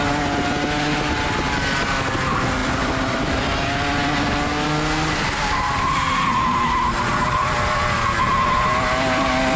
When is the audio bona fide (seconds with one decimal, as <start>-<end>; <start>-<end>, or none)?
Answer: 0.0-2.6; 3.4-9.6